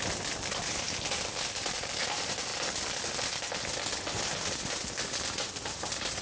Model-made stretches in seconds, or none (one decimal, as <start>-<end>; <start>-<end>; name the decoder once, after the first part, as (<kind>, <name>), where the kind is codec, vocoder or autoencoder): 0.0-6.2 (vocoder, BigVGAN v2)

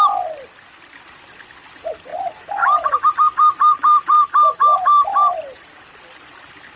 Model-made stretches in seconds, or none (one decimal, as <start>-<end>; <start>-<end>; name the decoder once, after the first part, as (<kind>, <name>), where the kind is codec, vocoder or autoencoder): 2.1-5.9 (vocoder, BigVGAN v2)

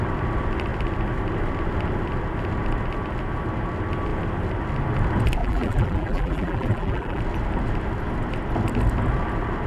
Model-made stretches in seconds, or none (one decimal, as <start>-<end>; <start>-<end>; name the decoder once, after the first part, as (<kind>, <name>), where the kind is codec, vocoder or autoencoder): 5.4-7.2 (vocoder, BigVGAN v2)

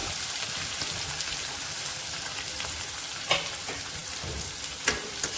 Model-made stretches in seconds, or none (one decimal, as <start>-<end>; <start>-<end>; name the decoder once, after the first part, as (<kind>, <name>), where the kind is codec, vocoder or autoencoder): none

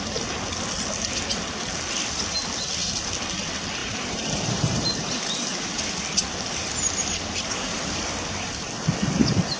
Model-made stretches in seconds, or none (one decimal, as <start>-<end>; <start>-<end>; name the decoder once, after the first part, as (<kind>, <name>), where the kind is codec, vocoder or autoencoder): 3.8-5.8 (vocoder, BigVGAN v2)